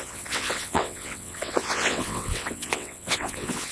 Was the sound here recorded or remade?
remade